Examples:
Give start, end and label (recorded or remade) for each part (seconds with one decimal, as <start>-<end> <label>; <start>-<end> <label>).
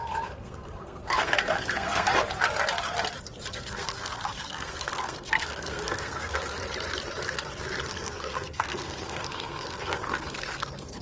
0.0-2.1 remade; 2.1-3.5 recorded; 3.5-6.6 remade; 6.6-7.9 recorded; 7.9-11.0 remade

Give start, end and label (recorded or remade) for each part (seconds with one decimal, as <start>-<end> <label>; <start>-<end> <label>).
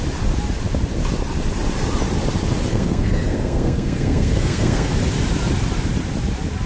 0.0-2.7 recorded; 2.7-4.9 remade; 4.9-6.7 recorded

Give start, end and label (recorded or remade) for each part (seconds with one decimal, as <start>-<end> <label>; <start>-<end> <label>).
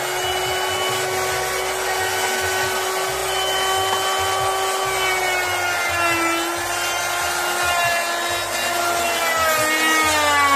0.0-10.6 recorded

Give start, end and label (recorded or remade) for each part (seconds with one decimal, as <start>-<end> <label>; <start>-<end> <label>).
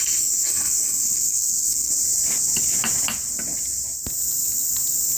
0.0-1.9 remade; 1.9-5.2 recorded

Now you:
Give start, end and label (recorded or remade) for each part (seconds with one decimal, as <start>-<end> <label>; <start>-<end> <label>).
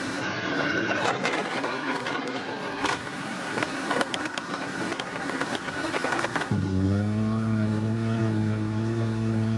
0.0-9.6 remade